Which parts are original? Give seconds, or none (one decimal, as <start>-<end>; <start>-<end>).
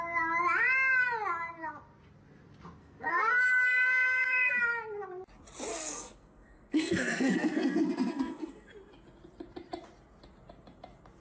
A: 0.0-2.8; 4.5-5.7; 8.7-11.2